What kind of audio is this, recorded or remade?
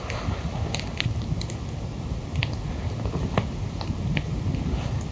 recorded